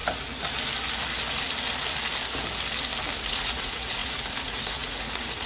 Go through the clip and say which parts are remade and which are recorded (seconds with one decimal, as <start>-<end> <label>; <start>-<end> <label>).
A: 0.0-3.3 recorded; 3.3-5.5 remade